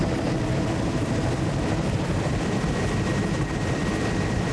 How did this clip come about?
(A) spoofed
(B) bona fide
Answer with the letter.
A